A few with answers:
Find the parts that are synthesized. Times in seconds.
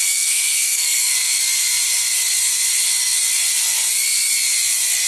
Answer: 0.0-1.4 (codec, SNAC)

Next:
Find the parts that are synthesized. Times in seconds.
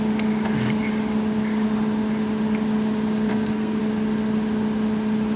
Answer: 3.3-3.8 (codec, SNAC)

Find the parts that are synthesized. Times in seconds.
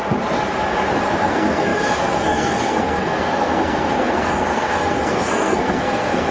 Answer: 1.2-6.3 (codec, SNAC)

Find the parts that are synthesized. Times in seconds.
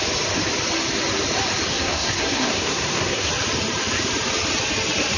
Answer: 1.7-3.3 (codec, SNAC)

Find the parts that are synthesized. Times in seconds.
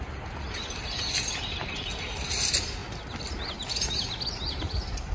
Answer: none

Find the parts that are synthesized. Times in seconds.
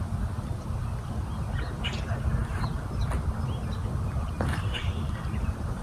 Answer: none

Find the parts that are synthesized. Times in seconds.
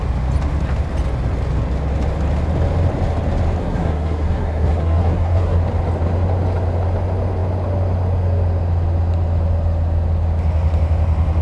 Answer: 3.6-5.6 (codec, SNAC)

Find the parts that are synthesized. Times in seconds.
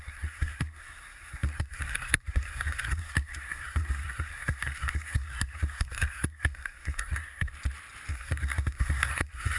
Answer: 0.0-7.5 (codec, SNAC); 8.1-9.6